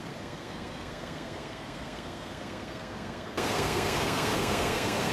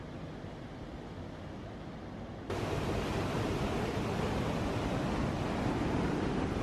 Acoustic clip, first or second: second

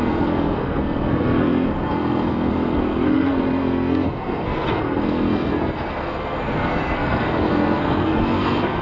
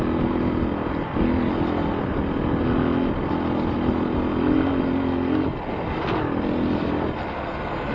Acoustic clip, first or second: second